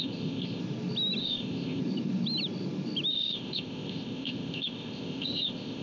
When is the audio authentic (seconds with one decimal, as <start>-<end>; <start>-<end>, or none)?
0.6-1.2; 1.8-3.1